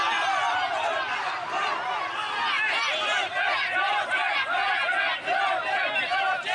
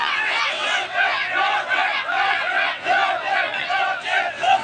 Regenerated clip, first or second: second